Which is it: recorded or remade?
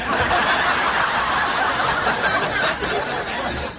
recorded